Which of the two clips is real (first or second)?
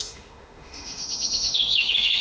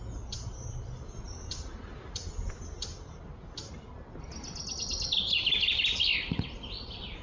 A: second